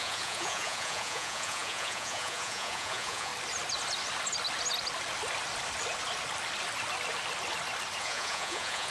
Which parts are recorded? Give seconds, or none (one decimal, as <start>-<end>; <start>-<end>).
3.3-8.0